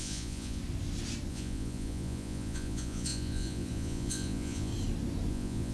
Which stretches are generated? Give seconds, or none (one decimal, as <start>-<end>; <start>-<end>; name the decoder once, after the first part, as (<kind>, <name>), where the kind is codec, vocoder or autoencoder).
0.0-0.6 (vocoder, Vocos); 1.3-4.7; 5.3-5.7